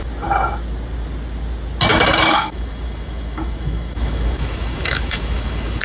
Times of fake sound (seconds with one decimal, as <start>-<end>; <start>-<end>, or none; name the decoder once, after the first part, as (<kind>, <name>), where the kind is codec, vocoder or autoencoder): 1.9-5.8 (autoencoder, DAC-VAE)